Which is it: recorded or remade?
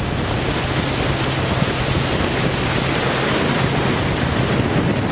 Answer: recorded